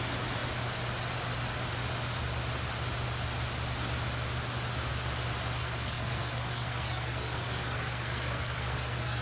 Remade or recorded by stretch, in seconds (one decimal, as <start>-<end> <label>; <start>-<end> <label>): 0.0-5.6 recorded; 5.6-9.2 remade